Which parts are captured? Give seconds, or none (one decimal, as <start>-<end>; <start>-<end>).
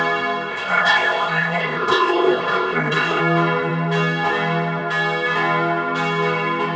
0.0-0.5; 3.2-6.8